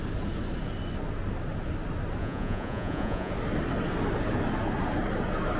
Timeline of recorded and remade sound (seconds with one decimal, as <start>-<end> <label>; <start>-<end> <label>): 0.0-2.2 recorded; 2.2-3.3 remade; 3.3-5.6 recorded